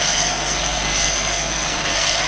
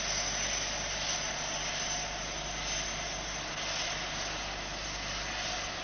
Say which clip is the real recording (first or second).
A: second